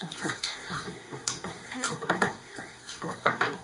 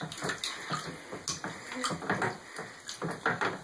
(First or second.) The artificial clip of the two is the first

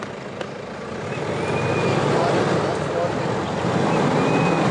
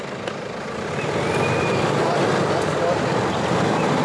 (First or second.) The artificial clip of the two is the second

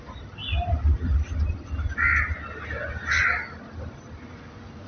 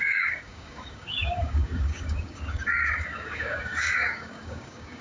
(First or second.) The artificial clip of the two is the second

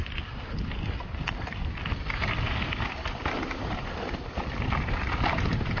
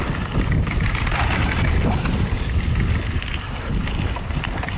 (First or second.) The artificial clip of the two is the first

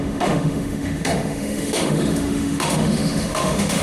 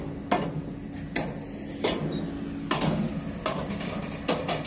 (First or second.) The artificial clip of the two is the first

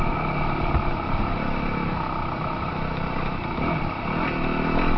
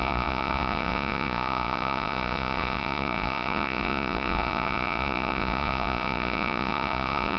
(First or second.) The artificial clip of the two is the second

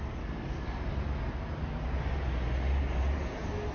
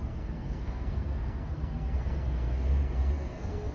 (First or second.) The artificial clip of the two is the second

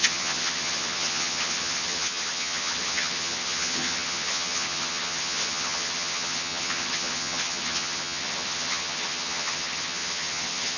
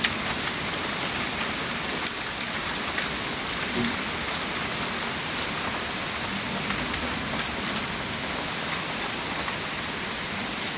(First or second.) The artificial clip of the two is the first